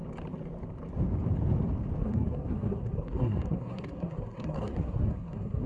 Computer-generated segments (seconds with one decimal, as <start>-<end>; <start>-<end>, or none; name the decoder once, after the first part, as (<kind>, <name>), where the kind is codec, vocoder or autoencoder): 2.0-5.7 (codec, SNAC)

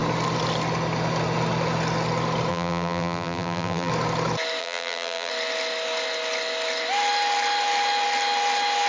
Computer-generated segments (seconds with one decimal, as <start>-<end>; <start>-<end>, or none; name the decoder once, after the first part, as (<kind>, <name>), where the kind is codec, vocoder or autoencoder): 2.5-3.9 (vocoder, BigVGAN v2); 4.6-5.3